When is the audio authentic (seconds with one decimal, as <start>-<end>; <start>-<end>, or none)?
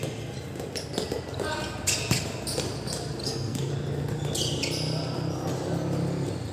0.0-3.2; 3.7-6.5